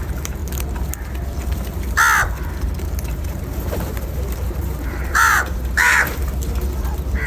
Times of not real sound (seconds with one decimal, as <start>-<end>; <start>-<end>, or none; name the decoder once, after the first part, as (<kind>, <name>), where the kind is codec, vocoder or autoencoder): 0.0-0.4 (vocoder, BigVGAN v2); 3.2-6.2